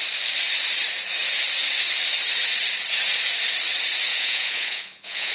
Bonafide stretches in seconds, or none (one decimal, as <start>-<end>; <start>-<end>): 0.0-4.1